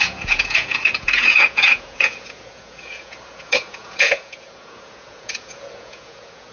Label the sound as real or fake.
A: fake